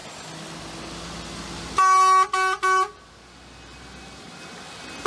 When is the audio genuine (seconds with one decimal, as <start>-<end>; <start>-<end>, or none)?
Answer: 0.0-5.1